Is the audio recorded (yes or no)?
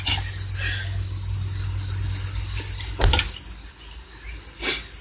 yes